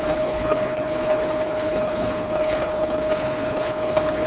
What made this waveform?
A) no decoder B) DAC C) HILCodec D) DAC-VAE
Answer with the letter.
C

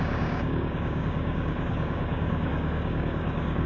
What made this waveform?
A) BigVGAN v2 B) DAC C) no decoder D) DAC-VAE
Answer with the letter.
B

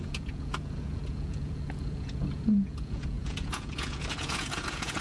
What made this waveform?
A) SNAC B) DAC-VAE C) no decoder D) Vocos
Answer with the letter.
D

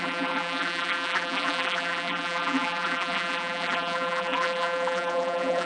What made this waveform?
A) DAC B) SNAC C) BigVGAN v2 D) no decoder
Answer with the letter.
C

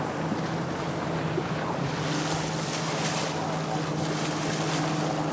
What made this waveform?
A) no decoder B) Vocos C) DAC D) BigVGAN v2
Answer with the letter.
A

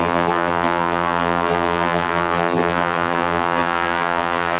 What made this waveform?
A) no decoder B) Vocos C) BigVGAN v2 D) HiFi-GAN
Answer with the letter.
C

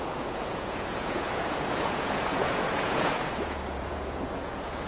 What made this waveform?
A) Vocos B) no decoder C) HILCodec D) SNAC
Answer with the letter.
A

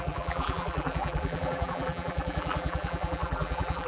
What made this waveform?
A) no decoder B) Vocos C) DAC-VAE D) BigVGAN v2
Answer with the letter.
D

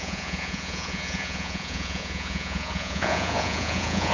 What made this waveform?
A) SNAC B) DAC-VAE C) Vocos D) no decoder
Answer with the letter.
C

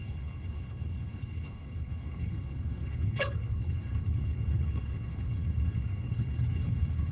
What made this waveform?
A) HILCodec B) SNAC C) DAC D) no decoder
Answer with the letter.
A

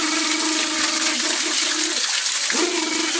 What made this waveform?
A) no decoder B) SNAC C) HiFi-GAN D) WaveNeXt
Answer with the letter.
A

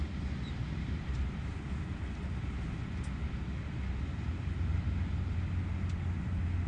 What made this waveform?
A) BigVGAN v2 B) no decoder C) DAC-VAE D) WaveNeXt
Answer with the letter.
B